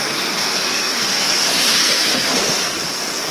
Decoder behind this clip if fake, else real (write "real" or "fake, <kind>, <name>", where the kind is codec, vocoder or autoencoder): fake, codec, SNAC